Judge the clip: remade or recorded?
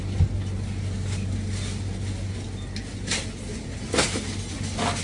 recorded